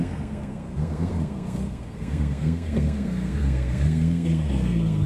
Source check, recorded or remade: remade